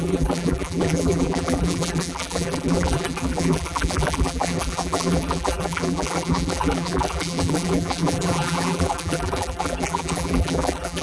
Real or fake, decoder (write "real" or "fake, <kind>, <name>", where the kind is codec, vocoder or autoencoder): fake, vocoder, BigVGAN v2